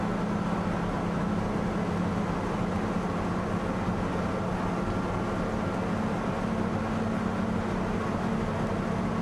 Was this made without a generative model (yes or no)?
yes